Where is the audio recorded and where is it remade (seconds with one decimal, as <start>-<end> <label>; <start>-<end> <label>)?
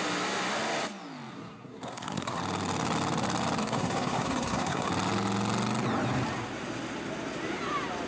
0.0-1.3 recorded; 1.3-2.4 remade; 2.4-3.6 recorded; 3.6-4.9 remade; 4.9-8.1 recorded